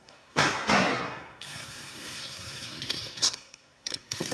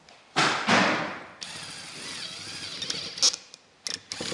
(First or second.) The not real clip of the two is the first